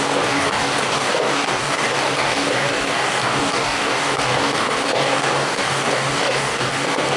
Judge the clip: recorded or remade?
remade